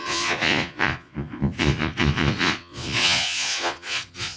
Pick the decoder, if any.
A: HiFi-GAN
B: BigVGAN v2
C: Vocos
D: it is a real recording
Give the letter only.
C